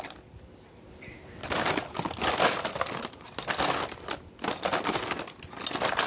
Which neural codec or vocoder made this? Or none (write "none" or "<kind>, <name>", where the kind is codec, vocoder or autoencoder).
none